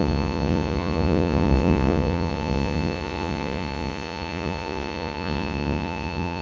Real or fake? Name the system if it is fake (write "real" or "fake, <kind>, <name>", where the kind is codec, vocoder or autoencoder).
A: fake, vocoder, Vocos